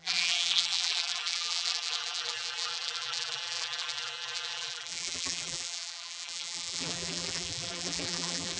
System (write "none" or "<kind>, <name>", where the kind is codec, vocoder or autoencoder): vocoder, BigVGAN v2